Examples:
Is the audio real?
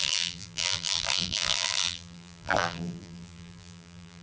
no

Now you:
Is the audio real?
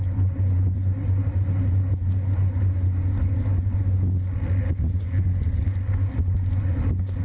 yes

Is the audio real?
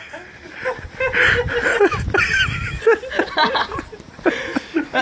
yes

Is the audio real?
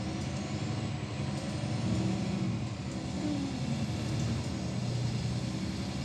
yes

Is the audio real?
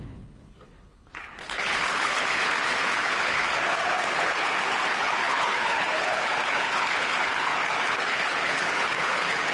no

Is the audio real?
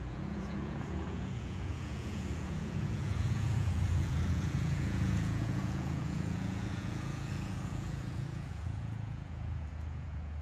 no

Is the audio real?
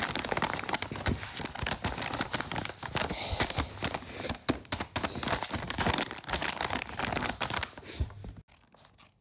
yes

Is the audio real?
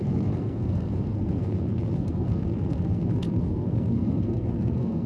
no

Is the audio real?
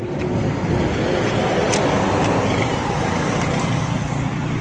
yes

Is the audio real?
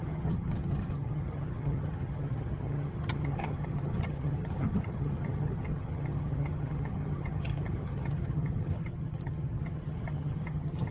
no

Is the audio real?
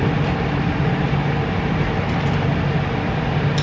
yes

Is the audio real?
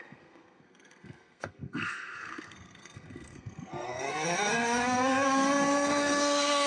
no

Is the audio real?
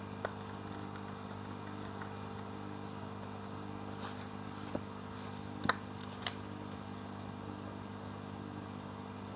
yes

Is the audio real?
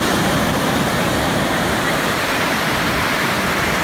no